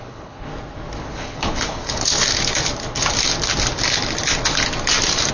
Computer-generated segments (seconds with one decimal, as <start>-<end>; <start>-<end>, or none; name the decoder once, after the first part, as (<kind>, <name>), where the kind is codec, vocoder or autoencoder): 0.0-0.5 (codec, HILCodec); 1.0-2.1